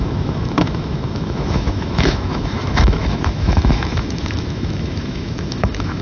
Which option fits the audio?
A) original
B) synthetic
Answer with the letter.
B